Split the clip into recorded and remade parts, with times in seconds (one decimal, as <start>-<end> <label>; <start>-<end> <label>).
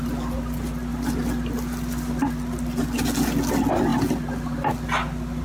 0.0-5.4 recorded